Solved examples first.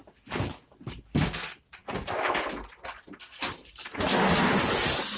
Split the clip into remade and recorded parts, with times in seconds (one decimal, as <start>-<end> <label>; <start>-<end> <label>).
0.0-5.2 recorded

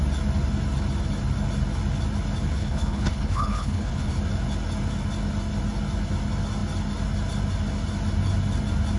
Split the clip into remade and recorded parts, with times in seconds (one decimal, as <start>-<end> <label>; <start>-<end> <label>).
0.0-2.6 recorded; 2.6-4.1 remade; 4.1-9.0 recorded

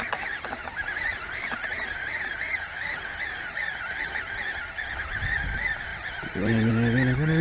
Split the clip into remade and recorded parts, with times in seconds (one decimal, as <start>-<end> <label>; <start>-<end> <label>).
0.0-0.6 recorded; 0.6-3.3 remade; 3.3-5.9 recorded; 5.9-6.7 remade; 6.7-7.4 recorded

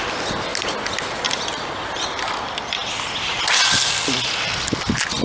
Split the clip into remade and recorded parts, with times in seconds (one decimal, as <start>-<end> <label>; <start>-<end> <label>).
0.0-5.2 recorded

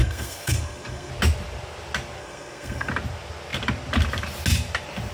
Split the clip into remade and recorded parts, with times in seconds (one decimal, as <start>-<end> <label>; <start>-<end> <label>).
0.0-1.1 remade; 1.1-2.2 recorded; 2.2-2.9 remade; 2.9-5.1 recorded

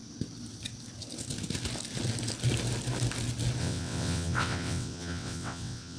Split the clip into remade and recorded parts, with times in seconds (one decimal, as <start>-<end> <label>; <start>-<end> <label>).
0.0-3.6 recorded; 3.6-6.0 remade